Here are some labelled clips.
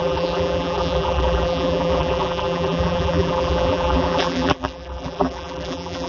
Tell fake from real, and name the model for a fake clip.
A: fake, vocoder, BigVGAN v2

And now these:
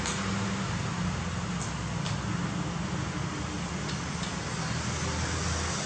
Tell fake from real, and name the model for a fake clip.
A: real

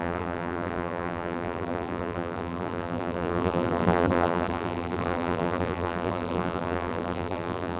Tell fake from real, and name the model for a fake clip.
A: fake, vocoder, BigVGAN v2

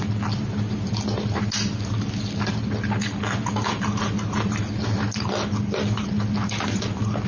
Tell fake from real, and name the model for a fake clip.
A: real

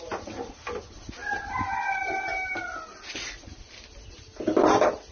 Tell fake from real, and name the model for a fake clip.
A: real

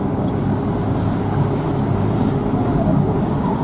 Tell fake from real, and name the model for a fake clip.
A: fake, codec, DAC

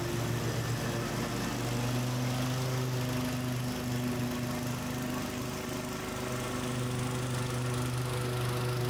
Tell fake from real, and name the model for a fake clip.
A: real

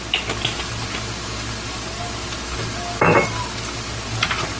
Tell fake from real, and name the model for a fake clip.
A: real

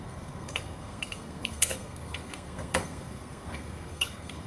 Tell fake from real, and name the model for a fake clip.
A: fake, codec, SNAC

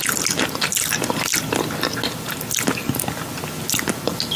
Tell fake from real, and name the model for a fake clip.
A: real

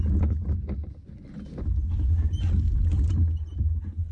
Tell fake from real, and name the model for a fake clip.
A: real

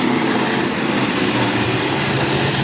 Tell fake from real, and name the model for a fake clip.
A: fake, vocoder, BigVGAN v2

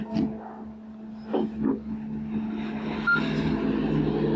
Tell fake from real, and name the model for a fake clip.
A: real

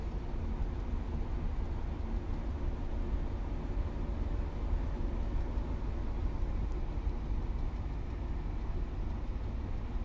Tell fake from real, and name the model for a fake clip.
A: real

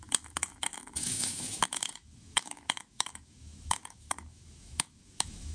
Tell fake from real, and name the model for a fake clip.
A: fake, autoencoder, DAC-VAE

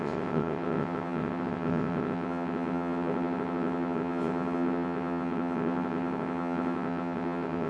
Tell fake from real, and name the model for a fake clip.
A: fake, vocoder, WaveNeXt